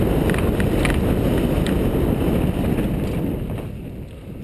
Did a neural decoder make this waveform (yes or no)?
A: no